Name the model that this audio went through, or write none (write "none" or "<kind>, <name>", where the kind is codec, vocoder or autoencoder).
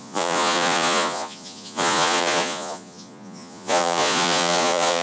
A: vocoder, Vocos